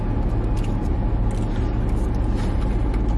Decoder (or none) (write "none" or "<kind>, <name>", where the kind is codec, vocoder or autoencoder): none